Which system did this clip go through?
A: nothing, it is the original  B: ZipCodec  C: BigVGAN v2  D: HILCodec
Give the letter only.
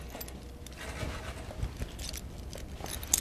A